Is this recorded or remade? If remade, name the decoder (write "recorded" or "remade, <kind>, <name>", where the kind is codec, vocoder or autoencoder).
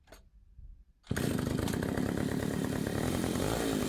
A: recorded